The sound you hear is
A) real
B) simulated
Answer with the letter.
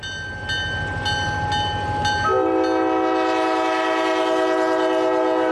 A